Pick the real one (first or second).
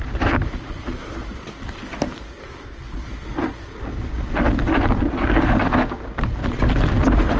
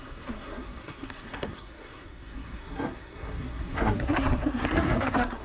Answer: first